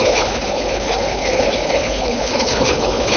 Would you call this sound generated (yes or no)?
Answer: yes